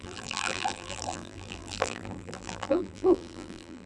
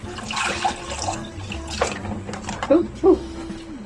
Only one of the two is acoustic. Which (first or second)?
second